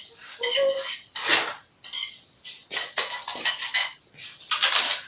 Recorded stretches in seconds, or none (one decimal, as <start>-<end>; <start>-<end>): 0.0-5.1